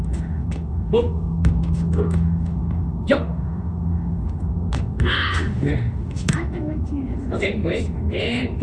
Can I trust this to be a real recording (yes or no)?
no